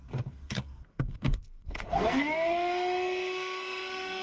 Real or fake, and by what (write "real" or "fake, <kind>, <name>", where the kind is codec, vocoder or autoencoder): fake, codec, SNAC